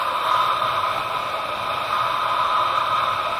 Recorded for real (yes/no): yes